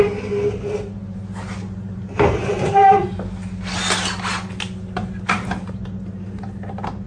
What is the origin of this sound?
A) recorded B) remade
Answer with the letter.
A